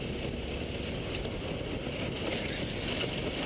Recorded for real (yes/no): yes